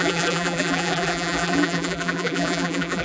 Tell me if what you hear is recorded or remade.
remade